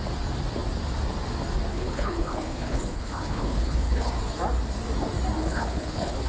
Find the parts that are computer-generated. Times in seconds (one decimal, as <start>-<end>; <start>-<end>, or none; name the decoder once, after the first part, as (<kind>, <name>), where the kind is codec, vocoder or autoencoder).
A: 1.7-4.1 (codec, HILCodec); 5.4-6.3